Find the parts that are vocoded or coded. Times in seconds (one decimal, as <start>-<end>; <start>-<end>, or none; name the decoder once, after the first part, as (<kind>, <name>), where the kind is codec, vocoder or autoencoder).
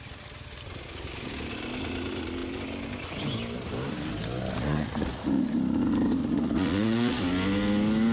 4.6-5.4 (vocoder, Vocos); 6.2-7.2